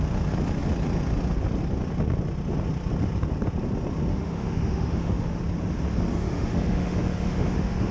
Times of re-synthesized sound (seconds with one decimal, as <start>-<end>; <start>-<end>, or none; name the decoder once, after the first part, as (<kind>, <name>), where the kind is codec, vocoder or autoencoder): 4.1-5.4 (autoencoder, DAC-VAE); 6.1-7.9